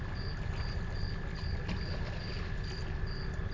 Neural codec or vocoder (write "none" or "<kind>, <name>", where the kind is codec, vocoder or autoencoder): none